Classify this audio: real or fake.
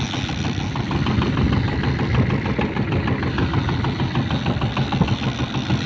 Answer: real